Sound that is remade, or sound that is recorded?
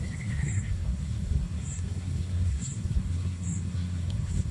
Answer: remade